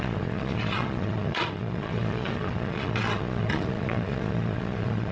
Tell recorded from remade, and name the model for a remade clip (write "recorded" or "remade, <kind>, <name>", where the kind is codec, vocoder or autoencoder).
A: remade, vocoder, Vocos